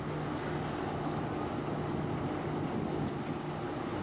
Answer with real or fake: real